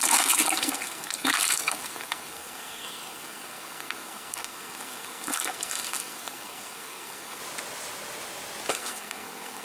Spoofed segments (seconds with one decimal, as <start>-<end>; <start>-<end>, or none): 0.0-7.4; 8.7-9.6

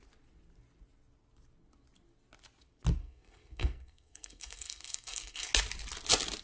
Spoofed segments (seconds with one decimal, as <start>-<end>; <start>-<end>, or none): 3.0-5.5

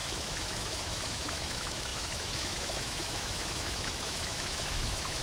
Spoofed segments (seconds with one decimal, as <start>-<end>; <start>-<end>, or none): 0.0-5.2

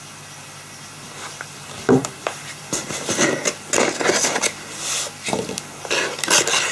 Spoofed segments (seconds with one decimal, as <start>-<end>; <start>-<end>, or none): 2.0-3.3

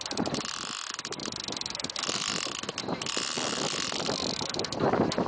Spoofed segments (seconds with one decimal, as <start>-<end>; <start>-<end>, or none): none

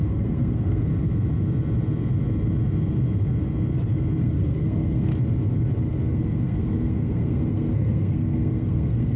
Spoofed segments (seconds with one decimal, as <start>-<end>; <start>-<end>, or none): 0.0-0.9; 4.2-5.1; 6.1-9.2

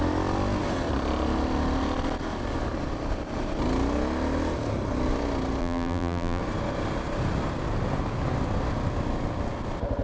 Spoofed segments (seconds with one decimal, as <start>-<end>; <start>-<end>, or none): 5.6-6.4